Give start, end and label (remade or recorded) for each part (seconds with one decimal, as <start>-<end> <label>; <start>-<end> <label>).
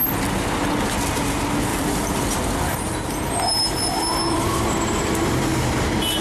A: 0.0-1.7 recorded; 1.7-5.4 remade; 5.4-6.2 recorded